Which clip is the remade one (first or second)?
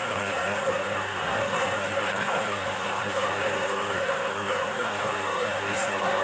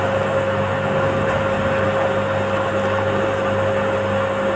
first